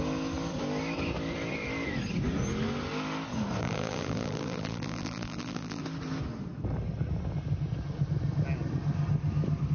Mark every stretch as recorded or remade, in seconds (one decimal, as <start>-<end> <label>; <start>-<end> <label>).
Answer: 0.0-3.6 recorded; 3.6-5.8 remade; 5.8-9.7 recorded